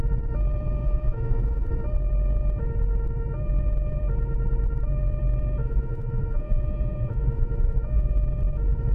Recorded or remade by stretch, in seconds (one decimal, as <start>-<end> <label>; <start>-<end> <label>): 0.0-0.8 recorded; 0.8-1.7 remade; 1.7-5.6 recorded; 5.6-8.1 remade; 8.1-8.9 recorded